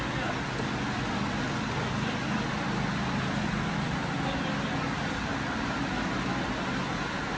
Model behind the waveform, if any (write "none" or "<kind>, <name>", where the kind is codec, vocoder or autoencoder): none